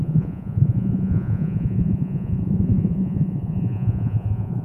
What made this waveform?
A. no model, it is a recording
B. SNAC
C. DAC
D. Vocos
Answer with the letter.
D